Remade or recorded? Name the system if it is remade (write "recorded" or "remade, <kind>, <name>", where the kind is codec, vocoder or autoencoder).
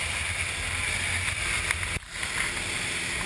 recorded